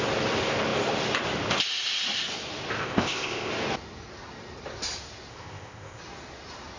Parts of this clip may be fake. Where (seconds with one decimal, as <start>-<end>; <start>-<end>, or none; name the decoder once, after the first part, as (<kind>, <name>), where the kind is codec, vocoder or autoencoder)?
2.8-3.5 (codec, ZipCodec); 5.3-6.0